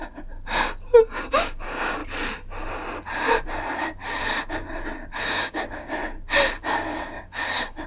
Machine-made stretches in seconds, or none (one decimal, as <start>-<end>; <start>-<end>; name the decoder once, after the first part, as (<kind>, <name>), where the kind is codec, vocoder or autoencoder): 0.0-2.0 (codec, DAC); 5.2-6.0; 6.6-7.9